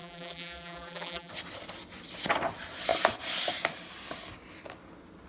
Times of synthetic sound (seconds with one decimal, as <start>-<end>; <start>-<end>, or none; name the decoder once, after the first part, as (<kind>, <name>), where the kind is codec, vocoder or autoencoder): 0.0-1.3 (vocoder, BigVGAN v2)